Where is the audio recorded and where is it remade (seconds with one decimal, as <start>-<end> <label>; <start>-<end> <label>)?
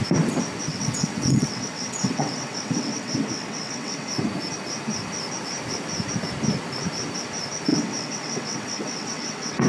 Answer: 0.0-0.7 recorded; 0.7-4.1 remade; 4.1-7.7 recorded; 7.7-9.7 remade